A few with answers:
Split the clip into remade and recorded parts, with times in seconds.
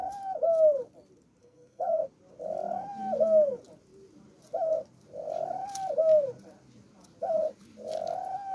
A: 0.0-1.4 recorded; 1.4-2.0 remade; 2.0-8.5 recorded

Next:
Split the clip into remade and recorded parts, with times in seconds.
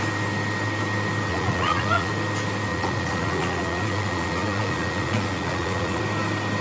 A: 0.0-1.3 recorded; 1.3-2.1 remade; 2.1-2.7 recorded; 2.7-6.0 remade; 6.0-6.6 recorded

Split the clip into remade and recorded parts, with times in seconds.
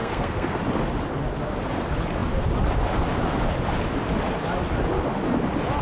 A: 0.0-0.6 remade; 0.6-5.8 recorded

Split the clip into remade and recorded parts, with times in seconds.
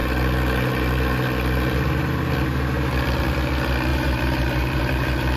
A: 0.0-3.9 recorded; 3.9-5.4 remade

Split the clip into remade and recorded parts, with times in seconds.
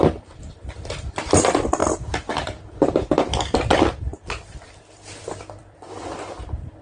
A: 0.0-6.8 remade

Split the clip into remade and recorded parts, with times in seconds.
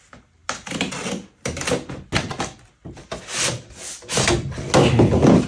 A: 0.0-5.5 recorded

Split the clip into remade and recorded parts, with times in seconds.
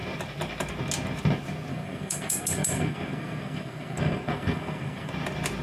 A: 0.0-1.7 recorded; 1.7-5.1 remade; 5.1-5.6 recorded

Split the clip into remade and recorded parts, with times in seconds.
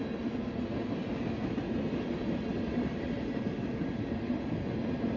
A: 0.0-5.2 recorded